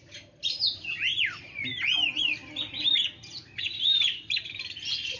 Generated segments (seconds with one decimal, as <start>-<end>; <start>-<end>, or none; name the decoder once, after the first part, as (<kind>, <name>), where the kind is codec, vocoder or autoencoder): none